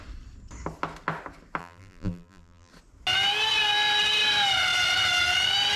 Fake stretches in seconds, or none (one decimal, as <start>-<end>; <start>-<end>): 1.6-2.7